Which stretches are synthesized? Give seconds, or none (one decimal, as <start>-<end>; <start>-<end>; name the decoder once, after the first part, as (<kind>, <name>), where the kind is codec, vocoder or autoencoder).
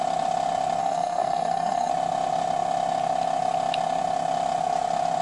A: 0.8-1.9 (codec, SNAC)